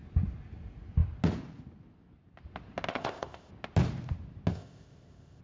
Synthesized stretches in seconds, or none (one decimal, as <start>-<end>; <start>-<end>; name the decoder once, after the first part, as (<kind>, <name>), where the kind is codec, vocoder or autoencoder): 2.9-3.5 (codec, ZipCodec); 4.5-5.4